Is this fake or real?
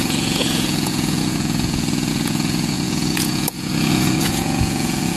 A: fake